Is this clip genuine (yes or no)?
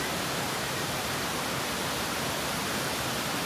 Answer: yes